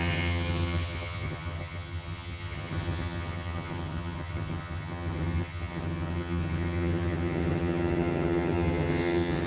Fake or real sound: fake